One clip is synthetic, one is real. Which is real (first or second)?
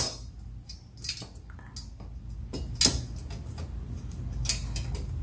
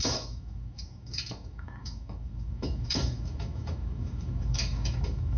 first